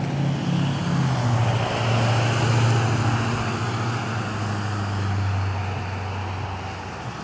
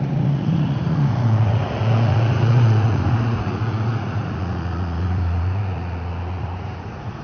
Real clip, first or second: first